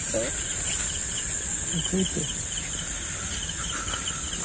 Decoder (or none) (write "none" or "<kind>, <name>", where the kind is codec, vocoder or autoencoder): none